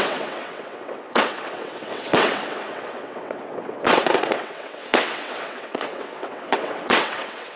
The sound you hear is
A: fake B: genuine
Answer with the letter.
A